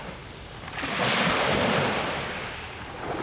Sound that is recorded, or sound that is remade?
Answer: recorded